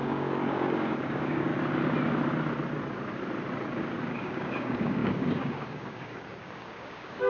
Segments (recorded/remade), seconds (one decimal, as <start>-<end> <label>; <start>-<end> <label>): 0.0-1.5 remade; 1.5-4.1 recorded; 4.1-7.3 remade